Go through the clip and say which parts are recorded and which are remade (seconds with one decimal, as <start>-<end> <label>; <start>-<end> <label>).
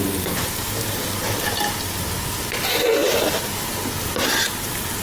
0.0-5.0 recorded